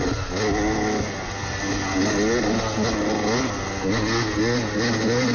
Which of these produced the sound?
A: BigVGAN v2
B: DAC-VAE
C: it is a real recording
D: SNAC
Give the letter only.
C